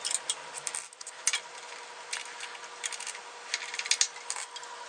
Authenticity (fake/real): real